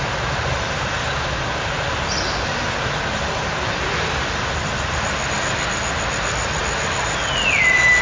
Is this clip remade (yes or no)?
no